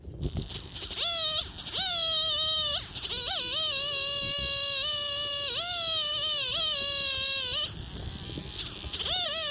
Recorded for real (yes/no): yes